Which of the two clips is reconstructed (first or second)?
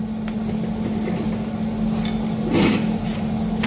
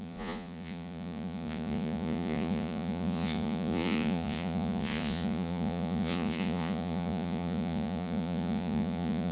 second